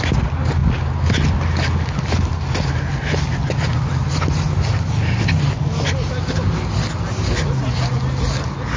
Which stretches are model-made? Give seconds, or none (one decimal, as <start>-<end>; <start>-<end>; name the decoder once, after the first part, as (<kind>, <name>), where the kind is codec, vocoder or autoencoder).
none